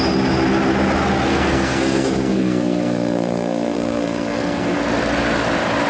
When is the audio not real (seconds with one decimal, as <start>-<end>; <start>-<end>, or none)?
1.3-4.8